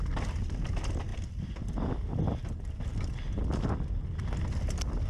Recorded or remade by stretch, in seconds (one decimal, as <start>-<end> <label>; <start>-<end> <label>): 0.0-5.1 recorded